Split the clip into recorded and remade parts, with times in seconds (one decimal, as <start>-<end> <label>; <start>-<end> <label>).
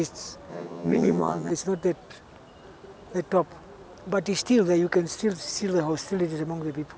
0.0-0.5 recorded; 0.5-1.5 remade; 1.5-7.0 recorded